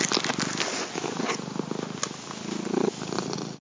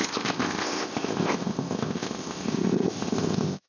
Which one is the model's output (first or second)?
second